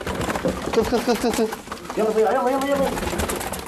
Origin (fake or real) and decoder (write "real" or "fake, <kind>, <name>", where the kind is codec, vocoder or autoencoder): real